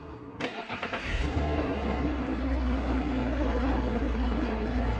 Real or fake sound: fake